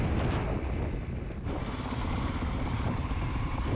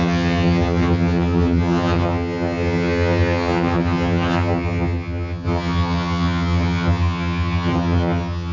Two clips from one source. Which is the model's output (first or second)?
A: second